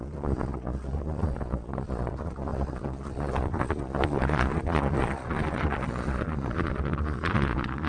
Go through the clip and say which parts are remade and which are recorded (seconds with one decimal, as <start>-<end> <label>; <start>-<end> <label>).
0.0-7.9 remade